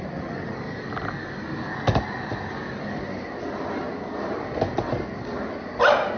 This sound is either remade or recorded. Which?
recorded